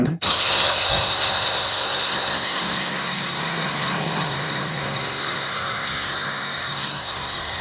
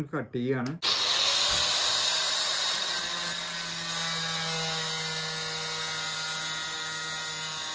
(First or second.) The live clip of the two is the second